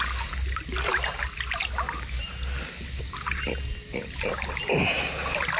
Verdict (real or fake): real